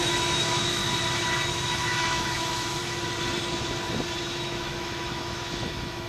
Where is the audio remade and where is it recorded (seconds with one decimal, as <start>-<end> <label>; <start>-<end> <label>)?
0.0-0.8 remade; 0.8-1.5 recorded; 1.5-2.8 remade; 2.8-4.3 recorded; 4.3-6.1 remade